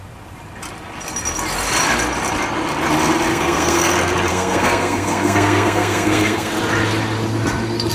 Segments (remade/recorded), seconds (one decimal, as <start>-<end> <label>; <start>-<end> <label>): 0.0-3.3 recorded; 3.3-3.9 remade; 3.9-4.3 recorded; 4.3-6.5 remade; 6.5-7.9 recorded